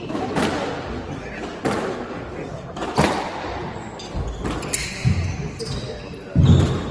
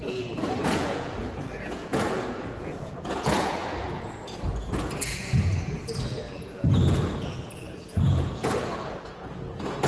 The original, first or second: first